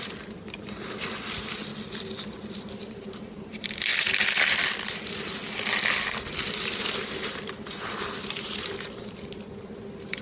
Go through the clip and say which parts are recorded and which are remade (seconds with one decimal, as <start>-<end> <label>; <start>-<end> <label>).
0.0-1.7 remade; 1.7-2.5 recorded; 2.5-3.9 remade; 3.9-6.8 recorded; 6.8-10.2 remade